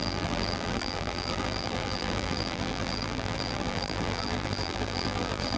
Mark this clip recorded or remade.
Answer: remade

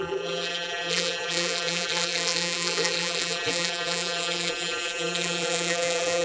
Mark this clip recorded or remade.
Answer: remade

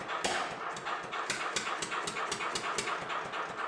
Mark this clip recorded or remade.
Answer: recorded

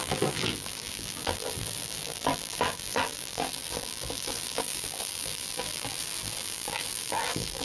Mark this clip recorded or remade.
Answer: remade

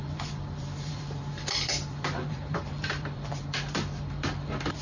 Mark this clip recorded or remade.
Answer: remade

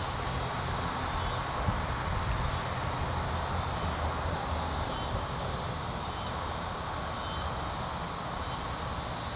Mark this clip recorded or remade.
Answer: recorded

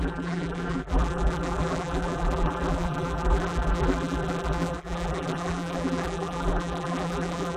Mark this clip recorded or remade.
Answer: remade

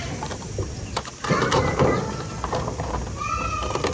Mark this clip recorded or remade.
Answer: recorded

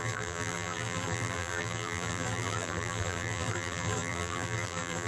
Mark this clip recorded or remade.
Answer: remade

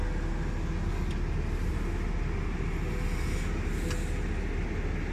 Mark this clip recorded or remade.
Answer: recorded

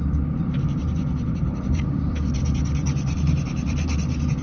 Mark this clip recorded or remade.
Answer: remade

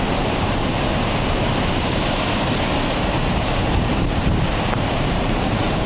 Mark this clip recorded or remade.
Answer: remade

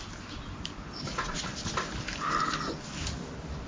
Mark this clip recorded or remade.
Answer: recorded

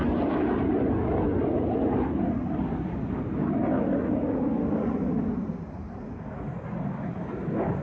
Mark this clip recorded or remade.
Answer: recorded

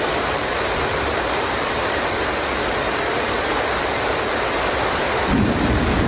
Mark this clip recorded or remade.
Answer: remade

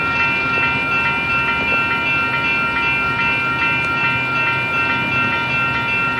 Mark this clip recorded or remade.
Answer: recorded